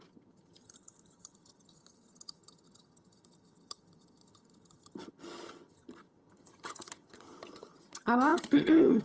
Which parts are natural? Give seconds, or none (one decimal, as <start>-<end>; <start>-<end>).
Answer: none